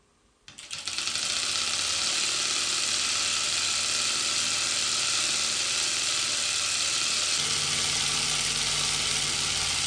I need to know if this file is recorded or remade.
recorded